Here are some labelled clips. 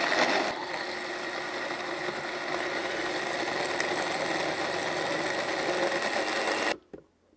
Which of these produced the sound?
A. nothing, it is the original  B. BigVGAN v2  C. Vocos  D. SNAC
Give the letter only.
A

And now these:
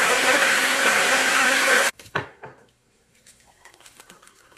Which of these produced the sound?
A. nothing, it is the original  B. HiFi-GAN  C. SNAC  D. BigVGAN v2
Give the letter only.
C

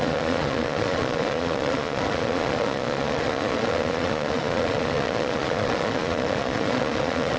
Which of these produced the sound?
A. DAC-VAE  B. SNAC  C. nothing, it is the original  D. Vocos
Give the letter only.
D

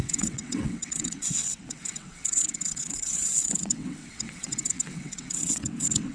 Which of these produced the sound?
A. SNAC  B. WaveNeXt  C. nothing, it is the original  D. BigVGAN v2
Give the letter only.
B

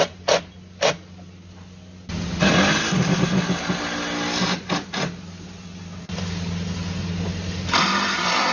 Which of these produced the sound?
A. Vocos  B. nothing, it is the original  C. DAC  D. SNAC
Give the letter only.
B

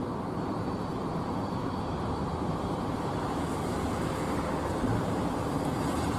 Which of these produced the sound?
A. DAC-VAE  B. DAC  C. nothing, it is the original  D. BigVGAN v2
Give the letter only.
D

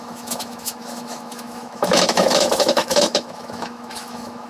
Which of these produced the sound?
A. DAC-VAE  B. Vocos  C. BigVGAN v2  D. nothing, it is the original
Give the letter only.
A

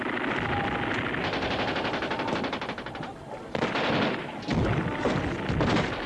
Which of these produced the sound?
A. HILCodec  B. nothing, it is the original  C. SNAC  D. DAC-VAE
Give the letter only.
B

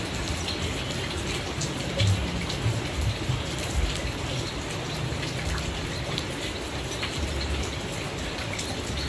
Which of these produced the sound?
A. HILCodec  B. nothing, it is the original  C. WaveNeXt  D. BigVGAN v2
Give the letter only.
B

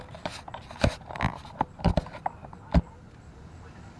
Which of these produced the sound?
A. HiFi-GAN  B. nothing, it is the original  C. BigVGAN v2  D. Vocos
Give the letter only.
B